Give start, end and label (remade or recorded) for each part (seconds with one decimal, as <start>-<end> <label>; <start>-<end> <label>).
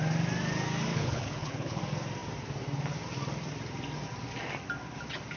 0.0-0.9 recorded; 0.9-1.8 remade; 1.8-5.4 recorded